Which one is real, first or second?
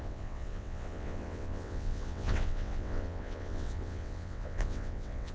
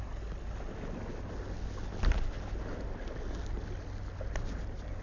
second